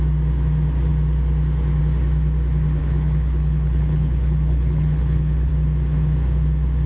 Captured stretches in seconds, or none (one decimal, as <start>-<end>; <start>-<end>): 0.0-2.8; 5.5-6.9